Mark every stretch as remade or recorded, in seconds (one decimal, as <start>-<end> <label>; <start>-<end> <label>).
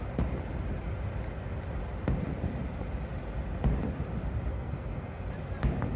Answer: 0.0-4.5 recorded; 4.5-5.3 remade; 5.3-6.0 recorded